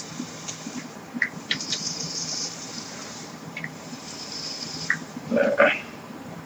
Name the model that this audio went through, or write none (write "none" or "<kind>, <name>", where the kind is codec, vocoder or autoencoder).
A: vocoder, BigVGAN v2